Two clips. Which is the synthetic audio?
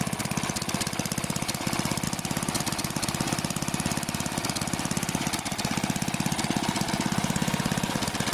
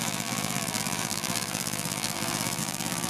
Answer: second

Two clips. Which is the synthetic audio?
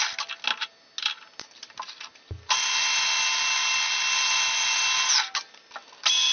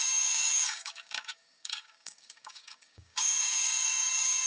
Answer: second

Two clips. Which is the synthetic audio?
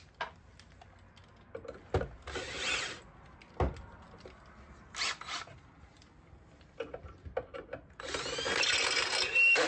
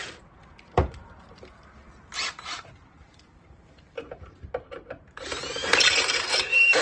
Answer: second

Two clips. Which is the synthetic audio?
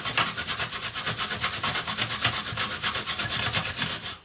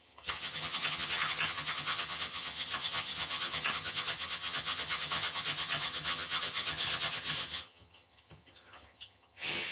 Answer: second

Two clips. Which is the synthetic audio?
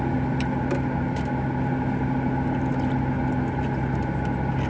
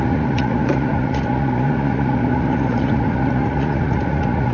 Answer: second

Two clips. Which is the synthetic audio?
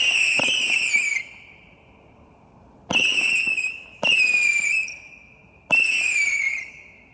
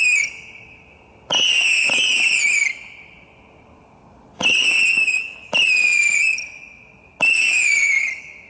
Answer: first